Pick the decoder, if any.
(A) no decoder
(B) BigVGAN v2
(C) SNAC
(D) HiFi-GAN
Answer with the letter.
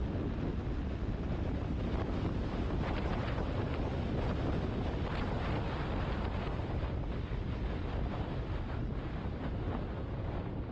A